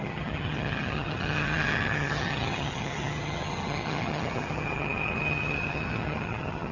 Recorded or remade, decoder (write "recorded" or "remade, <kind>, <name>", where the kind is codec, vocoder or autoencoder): remade, vocoder, HiFi-GAN